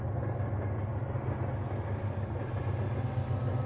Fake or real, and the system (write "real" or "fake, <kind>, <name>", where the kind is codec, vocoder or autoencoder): real